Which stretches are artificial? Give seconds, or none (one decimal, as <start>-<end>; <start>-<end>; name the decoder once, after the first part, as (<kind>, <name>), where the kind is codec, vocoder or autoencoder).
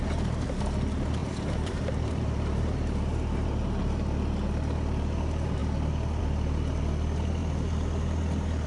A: 1.2-3.8 (vocoder, BigVGAN v2); 7.4-8.0